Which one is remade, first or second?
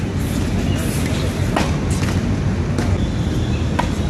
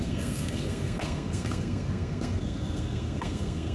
second